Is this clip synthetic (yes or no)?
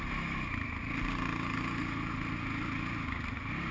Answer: no